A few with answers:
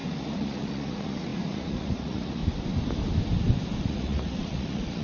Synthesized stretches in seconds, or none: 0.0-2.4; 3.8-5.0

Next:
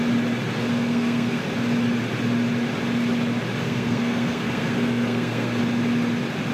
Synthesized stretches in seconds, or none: 0.7-1.4; 3.6-5.6

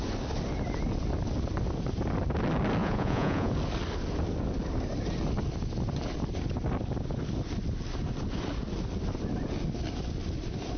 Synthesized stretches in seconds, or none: 2.8-3.5

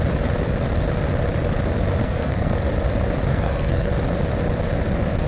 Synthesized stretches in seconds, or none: 2.0-2.6; 3.3-3.9

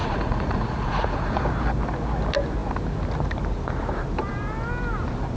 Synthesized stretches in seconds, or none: 0.0-1.4

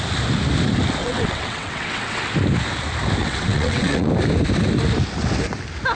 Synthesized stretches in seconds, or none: 1.0-2.2; 3.2-4.1

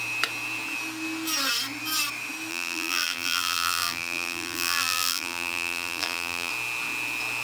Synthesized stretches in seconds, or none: 2.5-6.5